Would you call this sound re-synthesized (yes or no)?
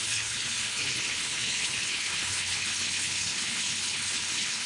yes